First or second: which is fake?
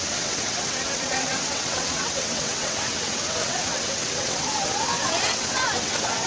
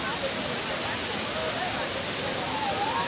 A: first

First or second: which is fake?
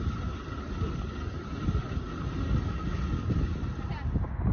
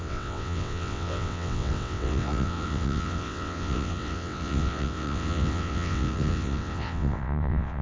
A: second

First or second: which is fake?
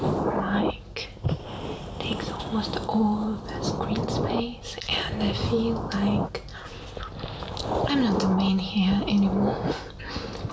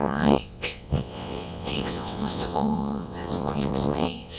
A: second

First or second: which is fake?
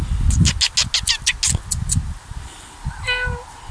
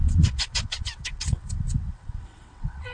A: second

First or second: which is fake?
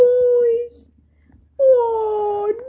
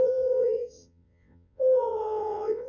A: second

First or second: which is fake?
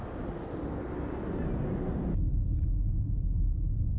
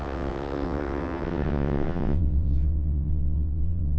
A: second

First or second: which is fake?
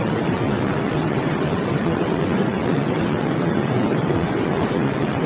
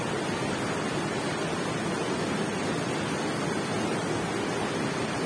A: first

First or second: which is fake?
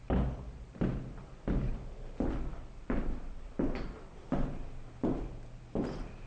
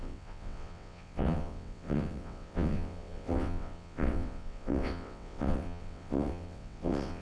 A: second